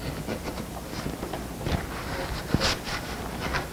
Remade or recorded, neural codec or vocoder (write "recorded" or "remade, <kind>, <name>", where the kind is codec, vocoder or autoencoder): recorded